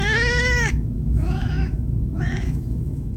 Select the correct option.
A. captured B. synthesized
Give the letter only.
B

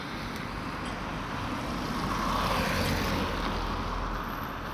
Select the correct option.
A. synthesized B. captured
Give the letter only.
B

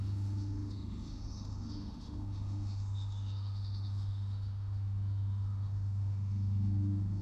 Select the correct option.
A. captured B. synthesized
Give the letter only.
B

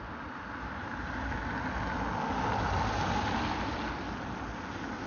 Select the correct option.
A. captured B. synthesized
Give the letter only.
A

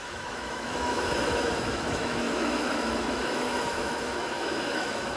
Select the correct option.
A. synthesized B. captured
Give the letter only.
A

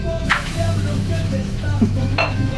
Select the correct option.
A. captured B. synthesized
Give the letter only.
B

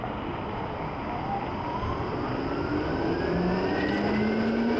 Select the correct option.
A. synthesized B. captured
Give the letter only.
B